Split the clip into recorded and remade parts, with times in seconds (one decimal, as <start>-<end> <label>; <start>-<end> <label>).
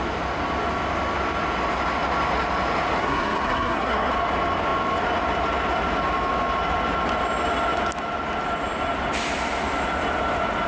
0.0-3.0 recorded; 3.0-4.1 remade; 4.1-10.7 recorded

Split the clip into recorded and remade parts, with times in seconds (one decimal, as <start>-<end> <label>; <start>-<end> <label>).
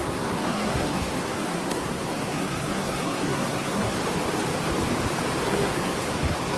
0.0-4.0 remade; 4.0-5.4 recorded; 5.4-6.6 remade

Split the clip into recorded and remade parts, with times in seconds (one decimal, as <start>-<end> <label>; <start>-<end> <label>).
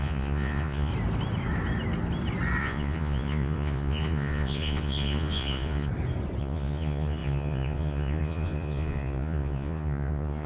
0.0-0.9 remade; 0.9-2.6 recorded; 2.6-5.9 remade; 5.9-6.4 recorded; 6.4-10.5 remade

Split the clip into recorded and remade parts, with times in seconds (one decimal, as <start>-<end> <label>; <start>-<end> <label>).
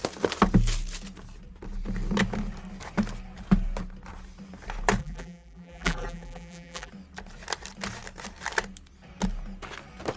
0.0-5.0 recorded; 5.0-6.9 remade; 6.9-10.2 recorded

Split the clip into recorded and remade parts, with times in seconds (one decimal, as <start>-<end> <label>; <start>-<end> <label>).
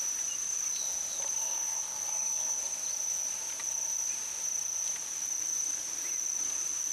0.0-1.4 recorded; 1.4-2.6 remade; 2.6-6.9 recorded